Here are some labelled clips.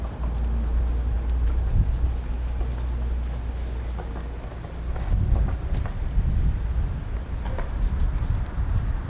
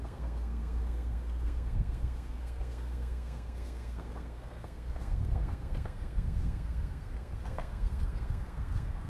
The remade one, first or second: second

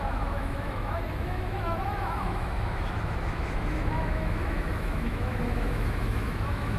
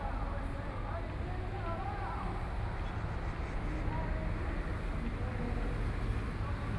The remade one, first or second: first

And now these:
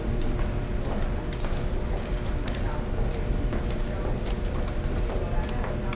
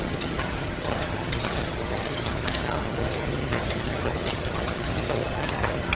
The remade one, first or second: second